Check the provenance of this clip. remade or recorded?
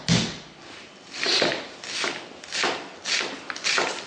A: recorded